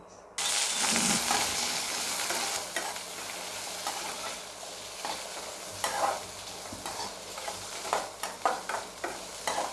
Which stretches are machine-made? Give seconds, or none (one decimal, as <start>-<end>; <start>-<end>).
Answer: 1.5-2.0

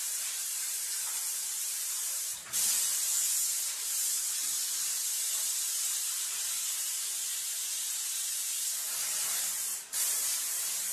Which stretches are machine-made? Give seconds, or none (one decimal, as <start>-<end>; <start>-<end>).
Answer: 0.0-0.9; 1.6-8.8; 9.4-10.9